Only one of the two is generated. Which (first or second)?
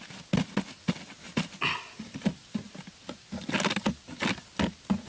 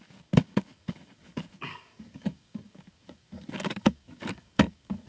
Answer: second